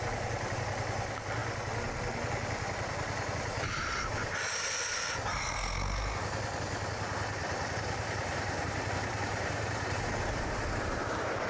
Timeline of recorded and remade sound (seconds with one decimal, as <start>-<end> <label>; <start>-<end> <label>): 0.0-0.5 remade; 0.5-7.4 recorded; 7.4-11.5 remade

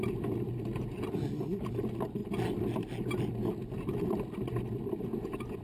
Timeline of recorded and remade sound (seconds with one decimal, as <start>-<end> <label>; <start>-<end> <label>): 0.0-5.6 recorded

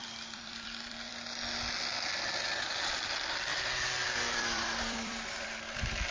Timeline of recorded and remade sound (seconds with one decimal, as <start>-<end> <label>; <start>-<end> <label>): 0.0-1.1 remade; 1.1-2.6 recorded; 2.6-6.1 remade

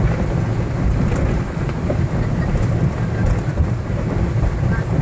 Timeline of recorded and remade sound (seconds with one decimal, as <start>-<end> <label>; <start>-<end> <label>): 0.0-0.5 remade; 0.5-2.6 recorded; 2.6-5.0 remade